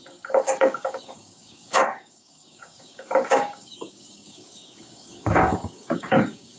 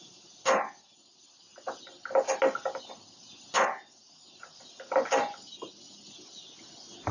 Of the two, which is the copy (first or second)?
first